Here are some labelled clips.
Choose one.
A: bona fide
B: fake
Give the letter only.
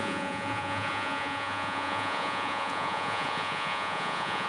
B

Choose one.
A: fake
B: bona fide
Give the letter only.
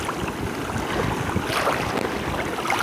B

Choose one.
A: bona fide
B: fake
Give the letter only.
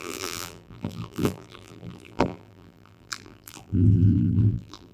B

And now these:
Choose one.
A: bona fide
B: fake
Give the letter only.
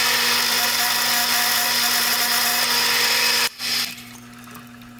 A